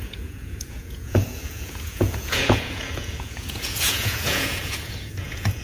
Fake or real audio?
fake